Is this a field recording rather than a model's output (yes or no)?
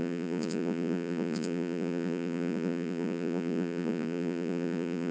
no